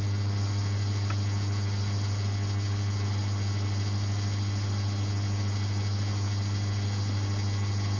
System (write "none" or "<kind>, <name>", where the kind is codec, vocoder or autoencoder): none